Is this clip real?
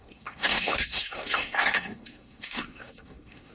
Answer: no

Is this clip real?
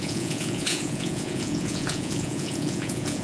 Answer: no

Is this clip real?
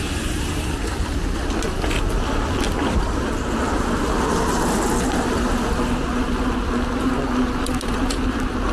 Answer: yes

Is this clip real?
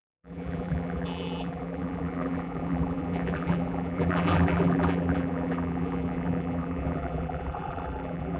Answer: no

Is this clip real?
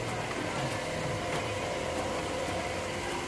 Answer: yes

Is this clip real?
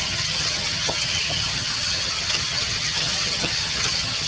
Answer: no